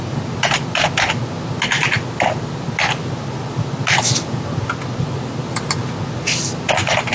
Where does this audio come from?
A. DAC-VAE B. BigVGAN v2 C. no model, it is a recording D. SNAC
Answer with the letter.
C